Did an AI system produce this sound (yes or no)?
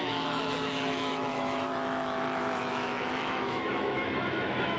yes